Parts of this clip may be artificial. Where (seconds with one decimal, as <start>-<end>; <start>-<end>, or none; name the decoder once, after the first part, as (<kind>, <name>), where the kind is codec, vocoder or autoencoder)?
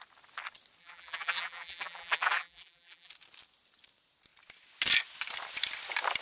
0.8-3.1 (vocoder, BigVGAN v2)